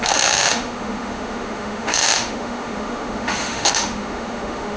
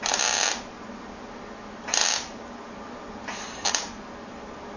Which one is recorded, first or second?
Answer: second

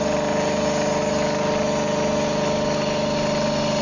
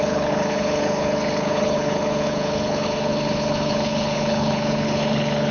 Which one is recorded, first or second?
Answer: first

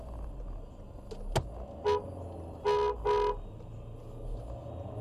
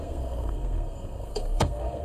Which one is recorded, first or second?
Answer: first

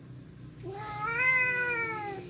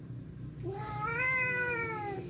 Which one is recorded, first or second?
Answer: first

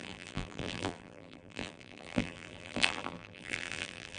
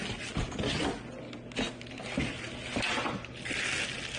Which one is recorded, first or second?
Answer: second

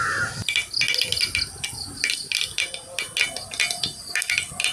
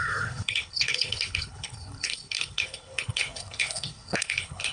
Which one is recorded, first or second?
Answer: first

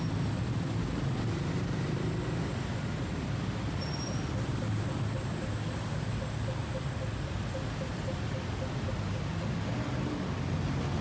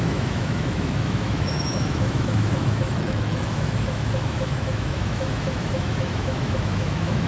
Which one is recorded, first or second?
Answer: first